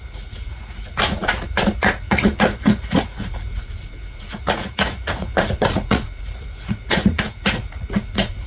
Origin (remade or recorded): remade